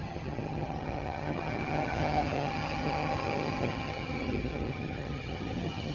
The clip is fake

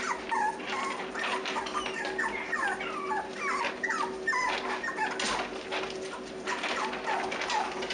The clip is real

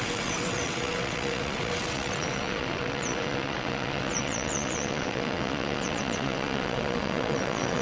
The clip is fake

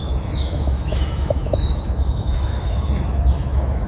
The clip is fake